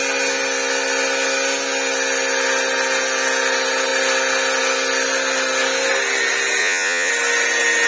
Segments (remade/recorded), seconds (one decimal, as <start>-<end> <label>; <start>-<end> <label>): 0.0-6.6 recorded; 6.6-7.1 remade; 7.1-7.9 recorded